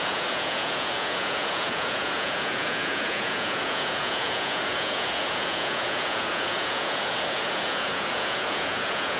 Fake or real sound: fake